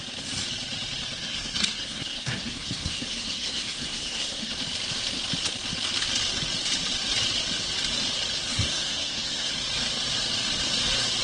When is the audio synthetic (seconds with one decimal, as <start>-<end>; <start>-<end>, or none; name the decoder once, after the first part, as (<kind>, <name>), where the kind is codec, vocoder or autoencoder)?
1.2-4.5 (codec, SNAC); 8.5-9.5